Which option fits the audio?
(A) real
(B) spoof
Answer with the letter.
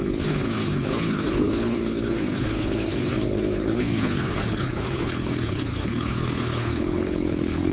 B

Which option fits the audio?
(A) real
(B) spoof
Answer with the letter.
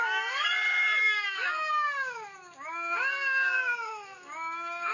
B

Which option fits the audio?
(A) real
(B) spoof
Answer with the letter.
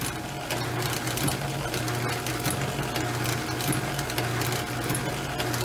A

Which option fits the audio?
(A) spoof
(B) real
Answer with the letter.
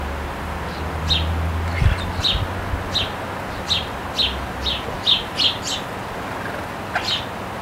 B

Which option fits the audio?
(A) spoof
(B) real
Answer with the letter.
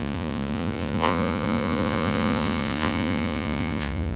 A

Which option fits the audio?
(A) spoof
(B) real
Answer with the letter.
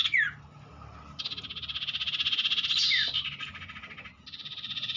B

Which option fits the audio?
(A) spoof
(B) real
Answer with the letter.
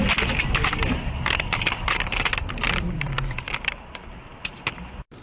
B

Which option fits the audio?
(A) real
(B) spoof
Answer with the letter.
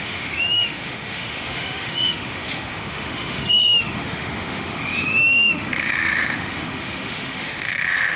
B